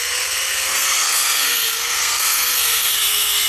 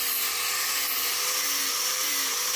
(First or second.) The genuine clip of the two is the second